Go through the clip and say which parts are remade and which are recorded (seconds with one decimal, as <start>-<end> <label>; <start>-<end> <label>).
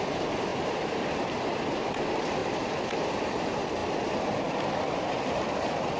0.0-6.0 remade